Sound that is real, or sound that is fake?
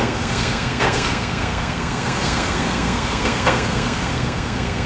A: fake